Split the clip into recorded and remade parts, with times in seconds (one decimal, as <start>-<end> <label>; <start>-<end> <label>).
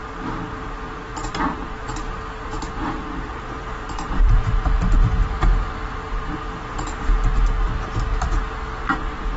0.0-1.1 recorded; 1.1-4.4 remade; 4.4-9.4 recorded